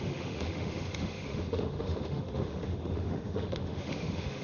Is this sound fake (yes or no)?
yes